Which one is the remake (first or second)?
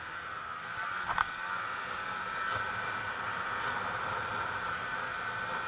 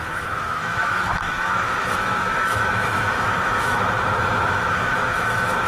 second